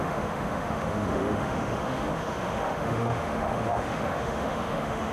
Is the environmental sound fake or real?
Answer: fake